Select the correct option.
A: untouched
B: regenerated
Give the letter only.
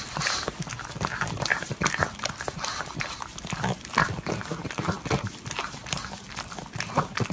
A